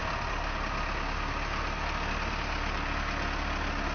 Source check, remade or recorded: recorded